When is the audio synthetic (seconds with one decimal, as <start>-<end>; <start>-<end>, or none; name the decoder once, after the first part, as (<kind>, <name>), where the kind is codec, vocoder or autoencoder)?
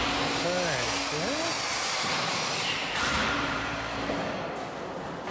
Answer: 1.7-4.1 (vocoder, BigVGAN v2)